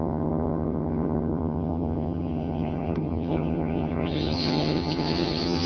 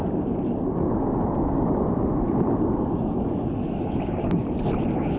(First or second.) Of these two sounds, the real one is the second